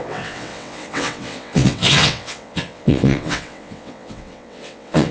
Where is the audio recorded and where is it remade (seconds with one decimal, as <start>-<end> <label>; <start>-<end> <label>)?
0.0-5.1 remade